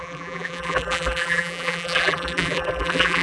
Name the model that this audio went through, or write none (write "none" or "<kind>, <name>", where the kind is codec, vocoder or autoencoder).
vocoder, BigVGAN v2